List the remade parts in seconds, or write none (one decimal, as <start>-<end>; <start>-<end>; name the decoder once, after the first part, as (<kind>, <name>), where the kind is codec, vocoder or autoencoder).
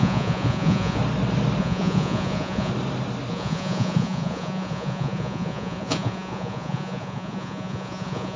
0.0-1.0 (vocoder, Vocos); 1.6-2.7; 3.3-8.4